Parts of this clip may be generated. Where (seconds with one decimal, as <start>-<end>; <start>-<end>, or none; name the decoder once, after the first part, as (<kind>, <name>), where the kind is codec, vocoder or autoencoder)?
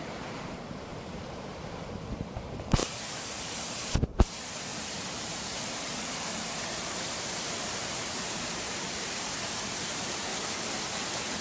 0.0-2.8 (vocoder, BigVGAN v2); 3.5-10.3